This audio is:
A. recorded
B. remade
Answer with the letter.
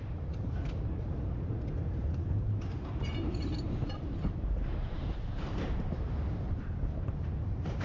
B